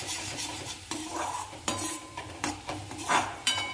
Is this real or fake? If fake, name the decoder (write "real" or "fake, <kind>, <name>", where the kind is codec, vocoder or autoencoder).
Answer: fake, vocoder, BigVGAN v2